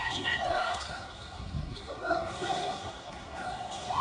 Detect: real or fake fake